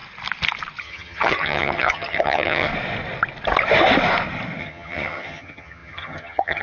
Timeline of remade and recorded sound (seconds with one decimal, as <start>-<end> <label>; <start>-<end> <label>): 0.0-0.8 recorded; 0.8-2.7 remade; 2.7-4.6 recorded; 4.6-6.6 remade

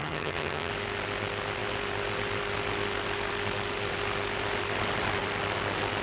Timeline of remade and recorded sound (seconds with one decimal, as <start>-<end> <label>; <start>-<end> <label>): 0.0-0.7 remade; 0.7-6.0 recorded

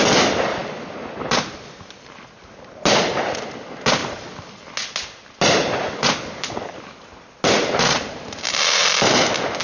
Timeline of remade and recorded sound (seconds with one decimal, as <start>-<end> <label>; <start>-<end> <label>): 0.0-9.6 recorded

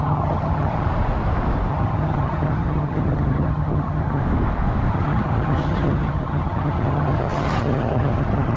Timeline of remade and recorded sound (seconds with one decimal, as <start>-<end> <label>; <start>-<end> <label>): 0.0-0.9 remade; 0.9-1.7 recorded; 1.7-4.2 remade; 4.2-4.9 recorded; 4.9-8.6 remade

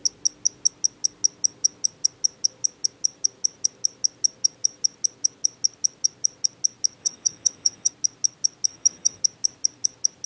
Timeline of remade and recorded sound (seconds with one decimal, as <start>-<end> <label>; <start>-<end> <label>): 0.0-7.0 recorded; 7.0-7.9 remade; 7.9-8.7 recorded; 8.7-9.2 remade; 9.2-10.3 recorded

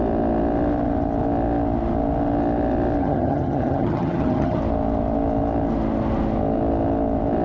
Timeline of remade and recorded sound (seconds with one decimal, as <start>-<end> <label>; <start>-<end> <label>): 0.0-3.0 recorded; 3.0-4.6 remade; 4.6-7.4 recorded

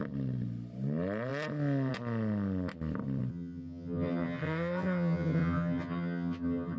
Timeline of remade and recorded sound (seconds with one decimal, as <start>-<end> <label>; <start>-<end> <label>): 0.0-3.3 recorded; 3.3-6.8 remade

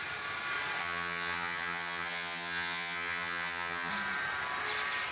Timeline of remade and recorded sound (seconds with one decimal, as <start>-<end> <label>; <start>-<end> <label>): 0.0-0.8 recorded; 0.8-3.9 remade; 3.9-5.1 recorded